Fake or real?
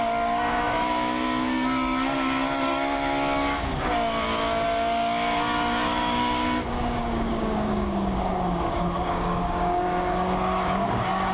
fake